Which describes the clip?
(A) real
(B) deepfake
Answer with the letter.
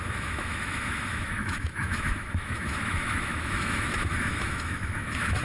B